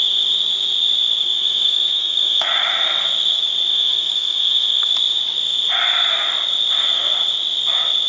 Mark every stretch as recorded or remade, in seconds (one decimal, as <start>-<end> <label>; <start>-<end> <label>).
0.0-1.4 recorded; 1.4-2.5 remade; 2.5-3.7 recorded; 3.7-4.9 remade; 4.9-8.1 recorded